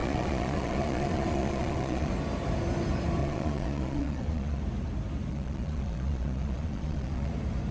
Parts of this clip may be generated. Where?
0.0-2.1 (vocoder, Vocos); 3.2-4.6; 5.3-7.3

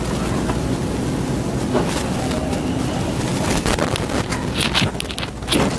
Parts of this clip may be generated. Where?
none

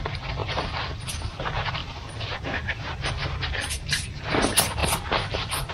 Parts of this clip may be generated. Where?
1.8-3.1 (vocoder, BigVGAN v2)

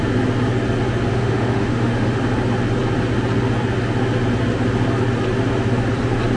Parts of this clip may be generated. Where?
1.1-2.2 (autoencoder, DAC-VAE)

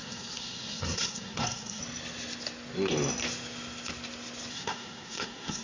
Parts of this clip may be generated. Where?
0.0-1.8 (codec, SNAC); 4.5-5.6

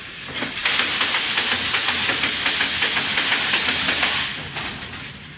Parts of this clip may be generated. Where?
0.0-0.6 (vocoder, BigVGAN v2); 3.8-4.7